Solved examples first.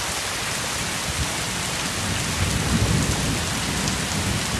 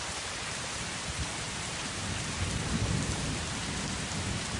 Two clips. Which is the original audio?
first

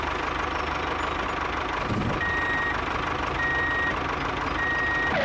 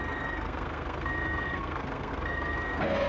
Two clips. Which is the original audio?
first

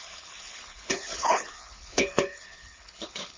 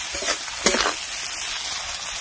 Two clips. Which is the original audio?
second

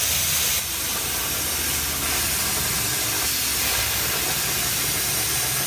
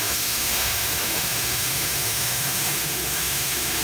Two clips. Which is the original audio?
first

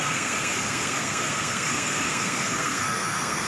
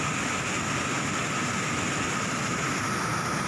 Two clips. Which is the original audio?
second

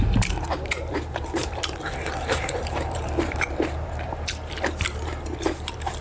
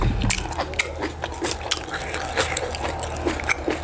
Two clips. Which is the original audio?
second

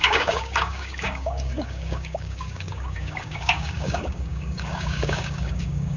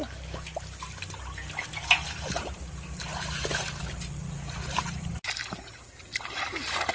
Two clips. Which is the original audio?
second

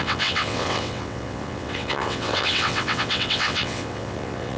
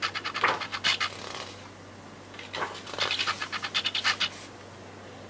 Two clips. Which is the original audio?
second